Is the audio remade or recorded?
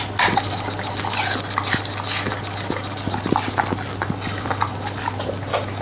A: recorded